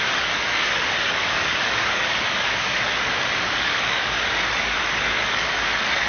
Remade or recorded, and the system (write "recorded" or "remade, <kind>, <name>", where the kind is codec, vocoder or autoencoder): remade, codec, DAC